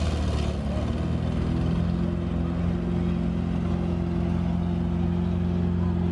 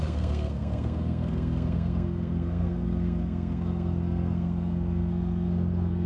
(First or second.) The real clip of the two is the first